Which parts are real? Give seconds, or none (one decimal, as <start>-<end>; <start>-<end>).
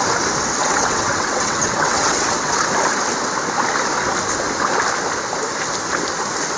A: 0.0-0.6; 2.7-6.6